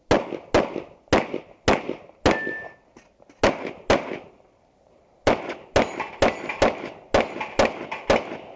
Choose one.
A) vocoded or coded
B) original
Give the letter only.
B